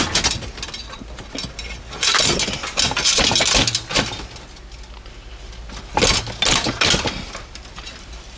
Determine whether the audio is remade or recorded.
recorded